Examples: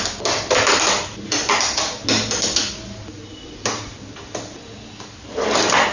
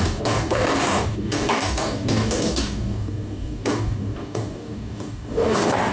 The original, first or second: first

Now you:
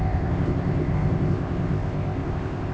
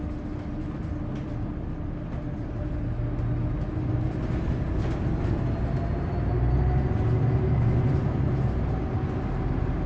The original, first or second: second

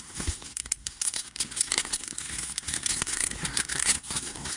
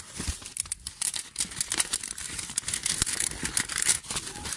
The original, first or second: second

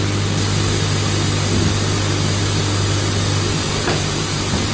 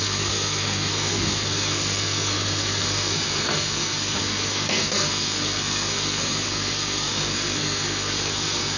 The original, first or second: first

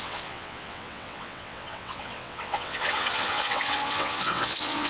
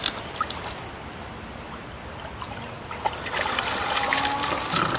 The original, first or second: second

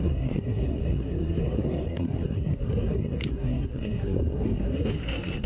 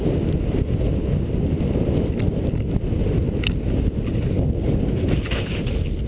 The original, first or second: second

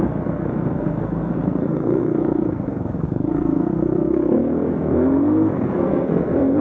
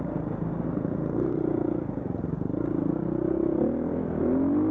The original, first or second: second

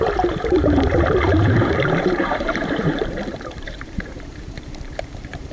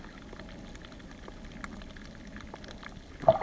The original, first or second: second